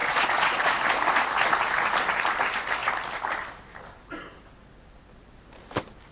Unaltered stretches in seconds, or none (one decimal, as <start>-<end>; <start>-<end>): 0.8-6.1